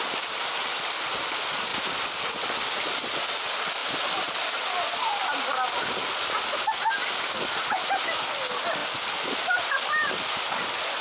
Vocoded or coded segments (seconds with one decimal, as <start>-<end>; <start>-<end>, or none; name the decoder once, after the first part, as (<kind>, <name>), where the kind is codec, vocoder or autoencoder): 1.7-2.3 (vocoder, BigVGAN v2); 8.8-10.5